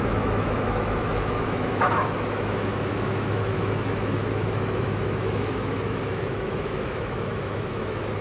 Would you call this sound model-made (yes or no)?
yes